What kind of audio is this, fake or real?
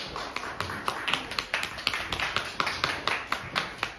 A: real